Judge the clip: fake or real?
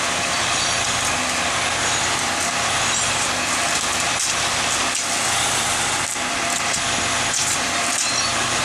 fake